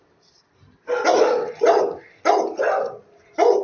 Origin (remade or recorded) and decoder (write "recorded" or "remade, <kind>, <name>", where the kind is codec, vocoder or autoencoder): remade, vocoder, BigVGAN v2